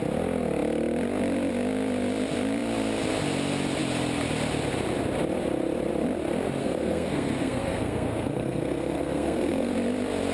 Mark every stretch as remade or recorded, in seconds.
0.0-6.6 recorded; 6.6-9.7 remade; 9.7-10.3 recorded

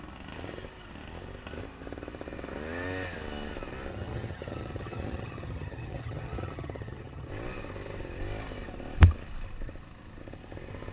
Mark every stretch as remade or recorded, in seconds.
0.0-3.9 recorded; 3.9-7.3 remade; 7.3-10.9 recorded

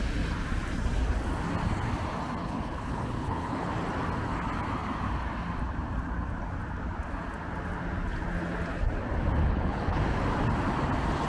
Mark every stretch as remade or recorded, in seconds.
0.0-2.4 recorded; 2.4-3.7 remade; 3.7-9.4 recorded; 9.4-10.0 remade; 10.0-11.3 recorded